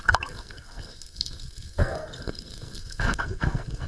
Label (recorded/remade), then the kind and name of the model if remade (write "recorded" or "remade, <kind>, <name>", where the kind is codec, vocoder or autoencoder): remade, codec, SNAC